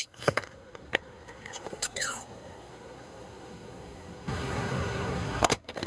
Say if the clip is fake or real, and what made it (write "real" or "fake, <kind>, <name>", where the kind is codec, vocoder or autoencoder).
fake, codec, SNAC